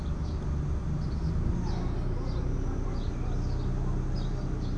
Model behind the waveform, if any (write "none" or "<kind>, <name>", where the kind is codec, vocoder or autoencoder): none